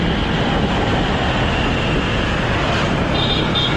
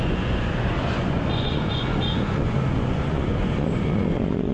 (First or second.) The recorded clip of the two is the first